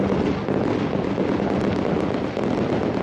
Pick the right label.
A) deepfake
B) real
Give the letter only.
B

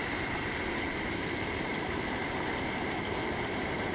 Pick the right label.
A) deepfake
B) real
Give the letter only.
A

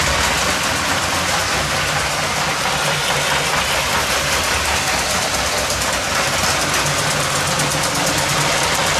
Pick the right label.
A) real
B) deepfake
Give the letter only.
A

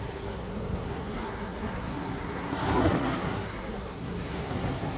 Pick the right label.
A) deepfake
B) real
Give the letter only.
A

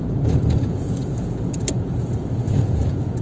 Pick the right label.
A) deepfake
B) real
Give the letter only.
A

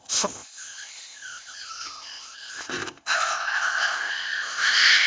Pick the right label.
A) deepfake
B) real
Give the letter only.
A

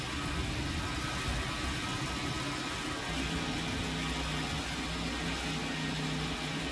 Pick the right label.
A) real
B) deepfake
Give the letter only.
A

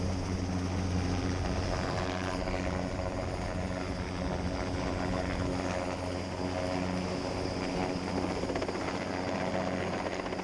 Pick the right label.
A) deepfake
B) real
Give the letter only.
B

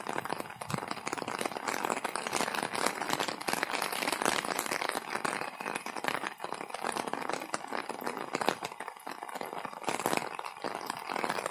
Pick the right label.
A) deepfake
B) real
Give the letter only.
A